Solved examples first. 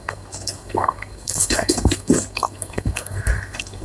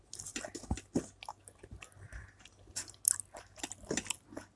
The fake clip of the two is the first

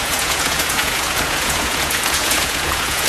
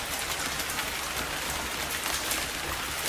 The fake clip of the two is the first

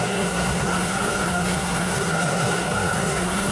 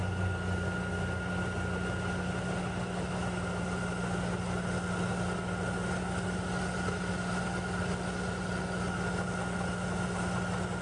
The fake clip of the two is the first